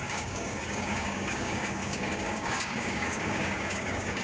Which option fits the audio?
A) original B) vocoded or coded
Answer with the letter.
B